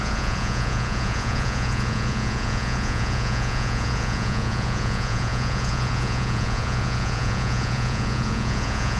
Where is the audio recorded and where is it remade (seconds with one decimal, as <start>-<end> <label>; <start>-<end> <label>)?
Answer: 0.0-9.0 remade